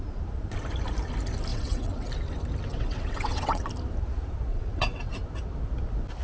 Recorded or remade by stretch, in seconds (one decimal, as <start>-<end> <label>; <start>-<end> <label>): 0.0-1.5 recorded; 1.5-2.1 remade; 2.1-2.7 recorded; 2.7-3.6 remade; 3.6-4.5 recorded; 4.5-5.1 remade; 5.1-6.2 recorded